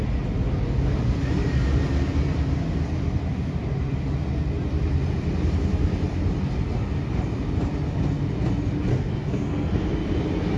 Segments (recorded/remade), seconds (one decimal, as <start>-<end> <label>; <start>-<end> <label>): 0.0-8.9 recorded; 8.9-9.9 remade; 9.9-10.6 recorded